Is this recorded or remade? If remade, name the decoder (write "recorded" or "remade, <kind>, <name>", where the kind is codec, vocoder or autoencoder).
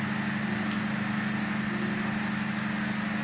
recorded